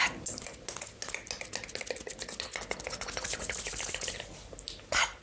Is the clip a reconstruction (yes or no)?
no